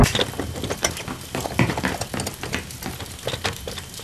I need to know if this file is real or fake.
real